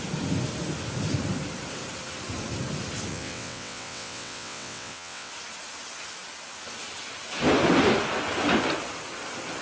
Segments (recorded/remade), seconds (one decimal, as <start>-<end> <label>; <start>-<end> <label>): 0.0-3.1 recorded; 3.1-5.3 remade; 5.3-9.6 recorded